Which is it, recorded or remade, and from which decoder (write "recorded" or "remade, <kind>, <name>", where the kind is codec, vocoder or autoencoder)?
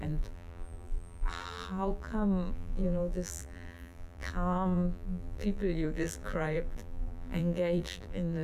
remade, vocoder, BigVGAN v2